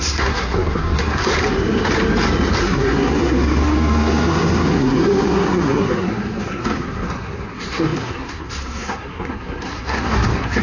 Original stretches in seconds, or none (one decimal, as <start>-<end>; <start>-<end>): 1.3-2.6